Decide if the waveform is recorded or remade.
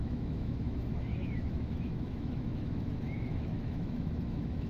remade